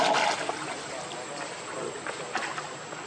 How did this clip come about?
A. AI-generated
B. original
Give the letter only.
B